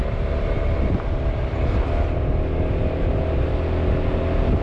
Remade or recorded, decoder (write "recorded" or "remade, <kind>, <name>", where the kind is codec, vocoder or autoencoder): recorded